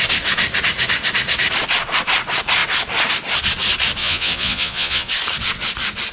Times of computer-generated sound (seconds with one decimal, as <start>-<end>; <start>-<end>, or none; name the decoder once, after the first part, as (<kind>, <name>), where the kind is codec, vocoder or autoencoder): 4.0-5.1 (vocoder, Vocos)